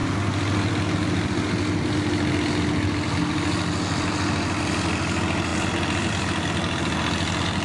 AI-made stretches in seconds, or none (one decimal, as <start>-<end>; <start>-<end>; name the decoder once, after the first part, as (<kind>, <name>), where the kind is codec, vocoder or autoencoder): none